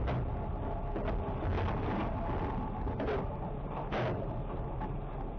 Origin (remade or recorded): recorded